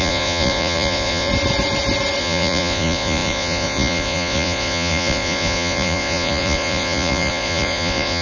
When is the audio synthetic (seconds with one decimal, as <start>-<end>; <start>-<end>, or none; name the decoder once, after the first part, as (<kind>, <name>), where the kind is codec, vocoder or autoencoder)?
0.0-1.3 (vocoder, Vocos); 2.2-8.2